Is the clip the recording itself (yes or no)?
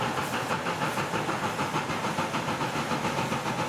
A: yes